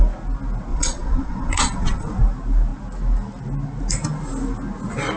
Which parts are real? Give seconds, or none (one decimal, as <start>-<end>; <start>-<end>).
0.0-0.7; 2.2-5.2

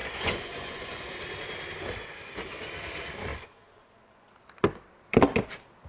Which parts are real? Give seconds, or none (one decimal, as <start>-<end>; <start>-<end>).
1.0-3.3; 4.3-5.9

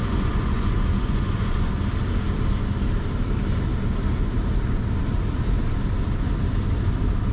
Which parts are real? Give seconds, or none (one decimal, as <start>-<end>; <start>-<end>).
1.7-7.3

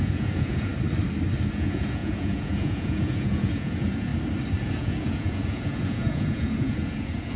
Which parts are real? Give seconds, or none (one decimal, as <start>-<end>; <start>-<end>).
0.7-1.5; 4.1-4.6

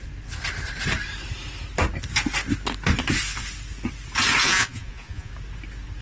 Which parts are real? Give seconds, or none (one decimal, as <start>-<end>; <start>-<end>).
0.0-4.4; 5.3-6.0

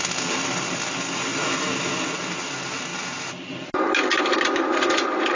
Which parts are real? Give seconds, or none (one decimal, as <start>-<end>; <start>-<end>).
0.0-5.3

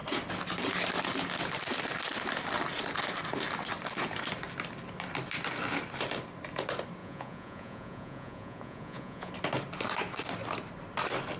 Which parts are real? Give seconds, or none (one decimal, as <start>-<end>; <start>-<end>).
0.0-7.0; 9.3-11.4

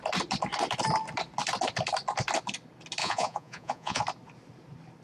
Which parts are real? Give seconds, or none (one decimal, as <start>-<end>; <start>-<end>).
0.0-3.0; 4.0-5.0